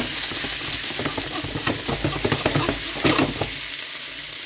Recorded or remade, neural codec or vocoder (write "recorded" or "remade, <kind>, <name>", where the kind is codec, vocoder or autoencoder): recorded